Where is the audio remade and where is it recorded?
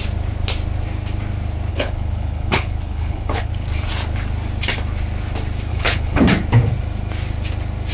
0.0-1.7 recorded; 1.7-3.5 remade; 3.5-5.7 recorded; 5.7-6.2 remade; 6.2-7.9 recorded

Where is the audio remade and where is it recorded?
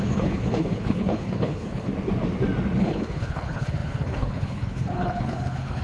0.0-1.9 remade; 1.9-2.8 recorded; 2.8-5.8 remade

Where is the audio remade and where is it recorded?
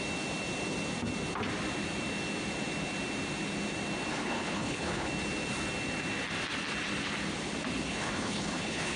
0.0-4.1 recorded; 4.1-5.1 remade; 5.1-7.9 recorded; 7.9-9.0 remade